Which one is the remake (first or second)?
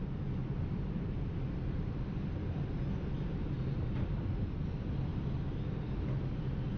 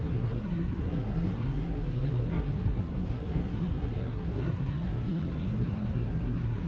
second